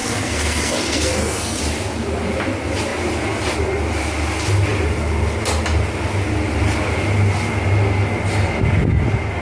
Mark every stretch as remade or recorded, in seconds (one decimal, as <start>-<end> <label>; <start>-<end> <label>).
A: 0.0-1.6 remade; 1.6-9.4 recorded